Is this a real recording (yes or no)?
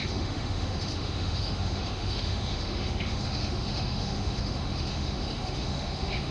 no